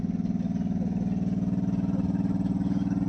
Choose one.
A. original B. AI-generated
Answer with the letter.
A